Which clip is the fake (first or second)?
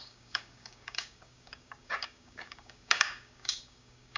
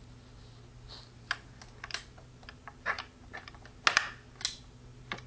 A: first